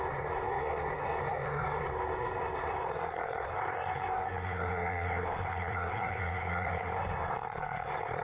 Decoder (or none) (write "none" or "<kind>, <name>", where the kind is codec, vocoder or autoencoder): codec, SNAC